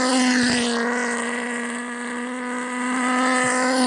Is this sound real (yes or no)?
yes